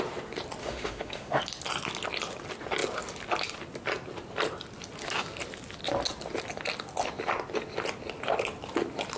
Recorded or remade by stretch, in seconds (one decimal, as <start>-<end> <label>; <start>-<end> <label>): 0.0-0.6 recorded; 0.6-1.4 remade; 1.4-9.2 recorded